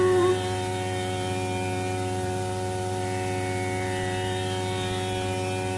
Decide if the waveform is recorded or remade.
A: recorded